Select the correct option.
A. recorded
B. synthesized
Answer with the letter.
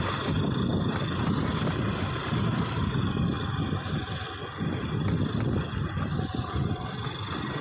B